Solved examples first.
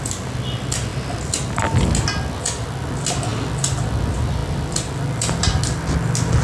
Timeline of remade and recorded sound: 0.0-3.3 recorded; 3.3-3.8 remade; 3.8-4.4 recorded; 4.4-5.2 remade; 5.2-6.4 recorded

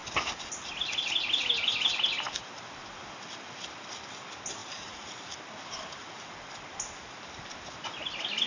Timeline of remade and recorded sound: 0.0-4.6 recorded; 4.6-6.3 remade; 6.3-8.5 recorded